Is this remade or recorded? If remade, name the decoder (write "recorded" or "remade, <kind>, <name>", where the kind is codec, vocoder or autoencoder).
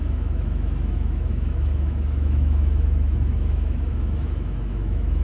remade, autoencoder, DAC-VAE